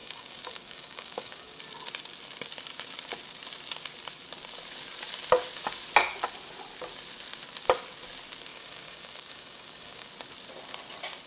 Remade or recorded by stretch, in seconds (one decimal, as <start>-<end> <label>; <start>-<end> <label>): 0.0-1.6 remade; 1.6-8.5 recorded; 8.5-10.1 remade; 10.1-11.3 recorded